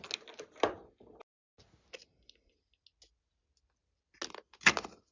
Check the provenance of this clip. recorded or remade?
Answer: recorded